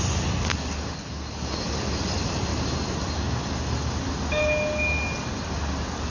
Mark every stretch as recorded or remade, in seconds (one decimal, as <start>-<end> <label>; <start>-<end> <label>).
0.0-6.1 recorded